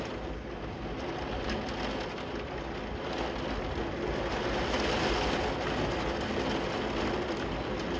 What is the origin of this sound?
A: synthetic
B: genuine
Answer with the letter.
B